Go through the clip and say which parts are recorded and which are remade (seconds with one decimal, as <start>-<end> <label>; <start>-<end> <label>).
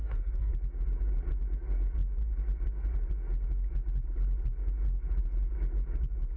0.0-0.5 remade; 0.5-6.4 recorded